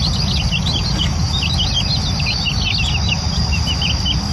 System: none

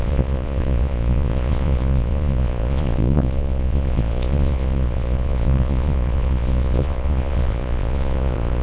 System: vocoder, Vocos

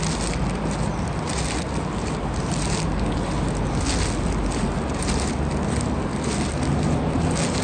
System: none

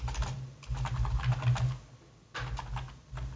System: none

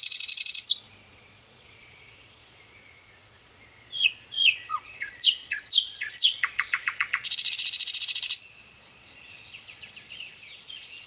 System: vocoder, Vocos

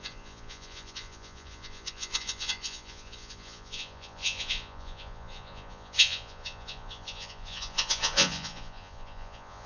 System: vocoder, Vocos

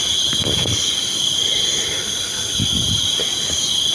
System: none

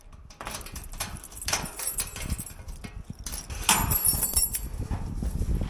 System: none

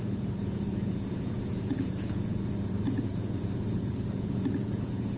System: vocoder, Vocos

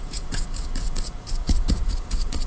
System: vocoder, Vocos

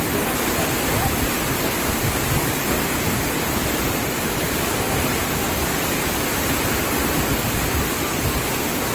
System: none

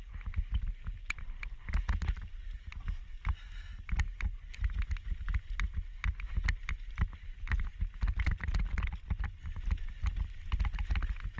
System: none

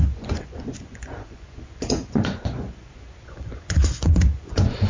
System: vocoder, Vocos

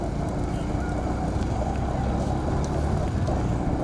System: none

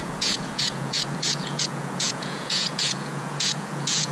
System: vocoder, Vocos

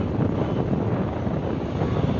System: none